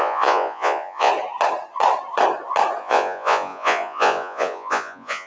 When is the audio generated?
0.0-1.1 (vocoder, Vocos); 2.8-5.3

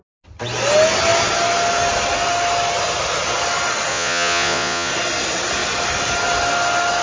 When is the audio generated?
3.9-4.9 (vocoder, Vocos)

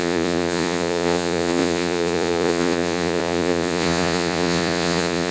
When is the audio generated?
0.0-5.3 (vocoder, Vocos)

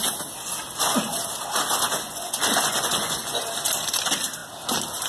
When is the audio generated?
2.0-3.4 (vocoder, Vocos)

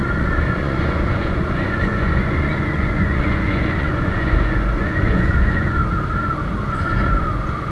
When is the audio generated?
0.0-5.8 (vocoder, Vocos); 6.7-7.7

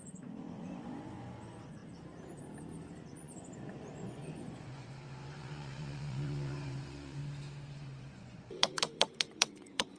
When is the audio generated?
0.0-1.8 (vocoder, Vocos); 2.8-7.2; 7.7-10.0